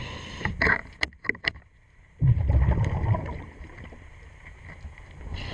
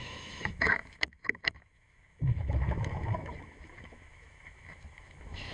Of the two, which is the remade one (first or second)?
second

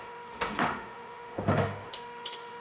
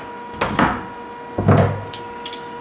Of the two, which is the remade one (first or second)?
first